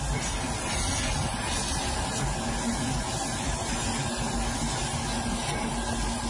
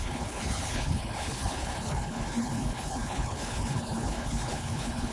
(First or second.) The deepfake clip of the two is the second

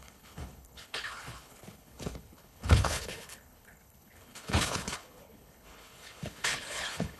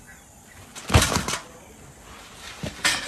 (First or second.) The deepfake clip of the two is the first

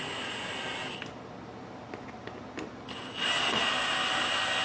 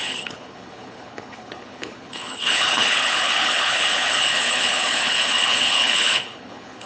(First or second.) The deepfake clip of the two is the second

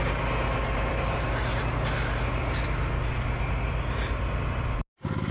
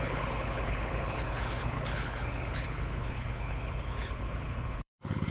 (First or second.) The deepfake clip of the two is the second